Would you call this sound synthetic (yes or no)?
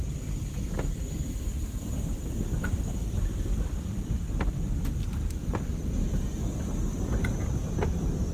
no